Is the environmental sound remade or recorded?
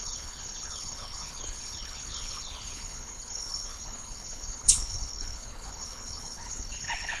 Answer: remade